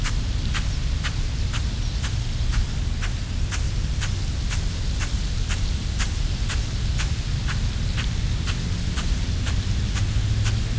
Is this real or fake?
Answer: real